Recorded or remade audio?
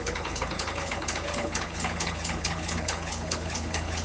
remade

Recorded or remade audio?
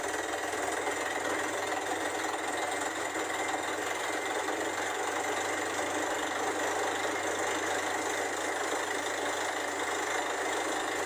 recorded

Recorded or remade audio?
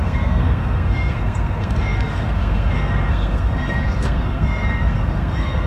remade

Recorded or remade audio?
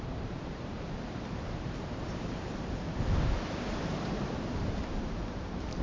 remade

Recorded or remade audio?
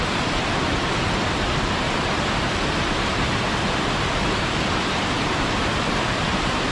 recorded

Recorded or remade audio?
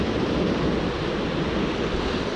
recorded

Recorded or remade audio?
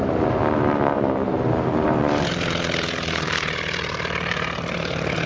remade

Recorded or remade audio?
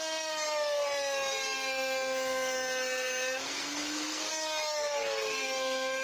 remade